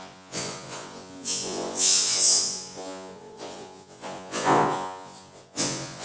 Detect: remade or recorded remade